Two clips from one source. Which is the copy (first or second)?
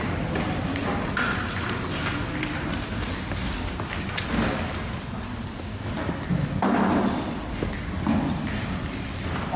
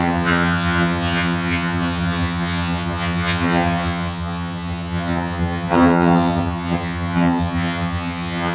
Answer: second